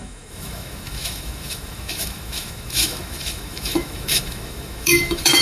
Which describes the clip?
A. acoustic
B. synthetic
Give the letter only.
B